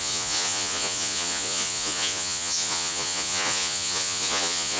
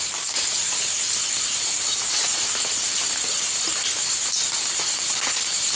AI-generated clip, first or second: first